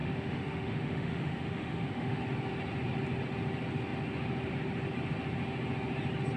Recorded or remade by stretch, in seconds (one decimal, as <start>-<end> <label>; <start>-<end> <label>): 0.0-2.2 remade; 2.2-6.4 recorded